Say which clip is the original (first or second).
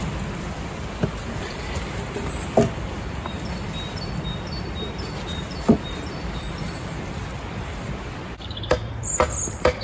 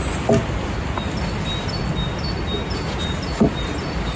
second